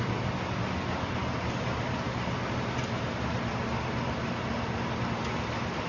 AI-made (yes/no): no